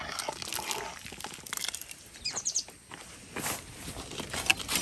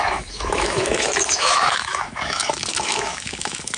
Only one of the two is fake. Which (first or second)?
second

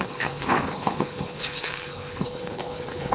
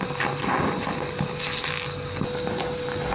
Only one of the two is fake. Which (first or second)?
first